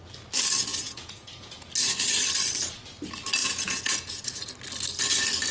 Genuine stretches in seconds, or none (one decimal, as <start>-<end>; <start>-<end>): 0.0-0.7; 1.7-3.4; 4.5-5.5